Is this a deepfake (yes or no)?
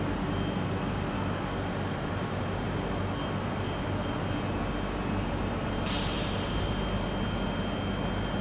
no